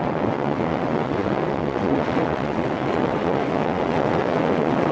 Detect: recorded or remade remade